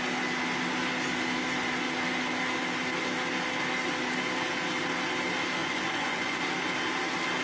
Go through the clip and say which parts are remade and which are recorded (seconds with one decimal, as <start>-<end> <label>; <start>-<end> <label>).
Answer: 0.0-5.6 recorded; 5.6-6.4 remade; 6.4-7.4 recorded